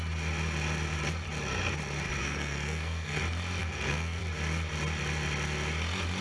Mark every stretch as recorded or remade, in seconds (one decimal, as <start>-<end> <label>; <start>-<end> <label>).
0.0-2.2 recorded; 2.2-3.2 remade; 3.2-3.6 recorded; 3.6-4.2 remade; 4.2-6.2 recorded